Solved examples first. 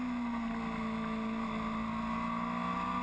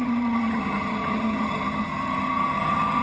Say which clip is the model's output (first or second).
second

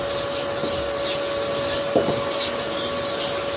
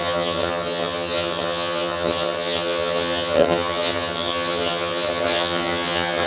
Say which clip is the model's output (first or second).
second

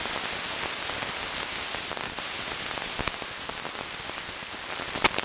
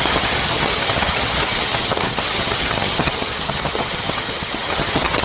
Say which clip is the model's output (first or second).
second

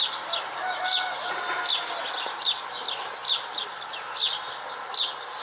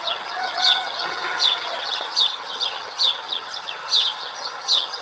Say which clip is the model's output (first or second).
second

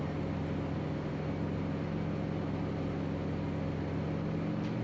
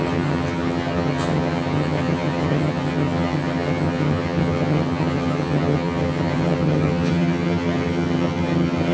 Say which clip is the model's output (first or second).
second